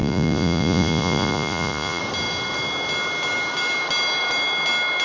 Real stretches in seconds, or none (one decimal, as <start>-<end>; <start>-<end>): 2.0-5.0